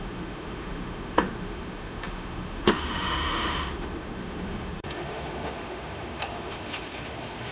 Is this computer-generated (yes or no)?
yes